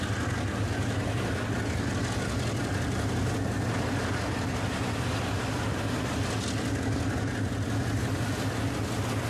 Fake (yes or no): no